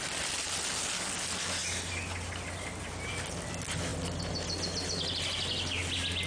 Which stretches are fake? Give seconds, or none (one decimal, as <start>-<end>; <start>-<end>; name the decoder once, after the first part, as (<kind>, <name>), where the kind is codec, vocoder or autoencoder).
none